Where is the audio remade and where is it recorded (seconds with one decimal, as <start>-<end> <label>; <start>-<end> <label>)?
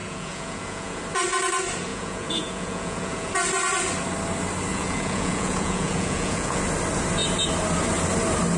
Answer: 0.0-1.0 remade; 1.0-1.9 recorded; 1.9-3.3 remade; 3.3-4.7 recorded; 4.7-6.6 remade; 6.6-8.6 recorded